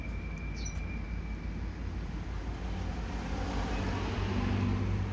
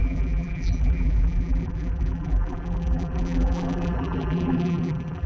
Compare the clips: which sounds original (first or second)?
first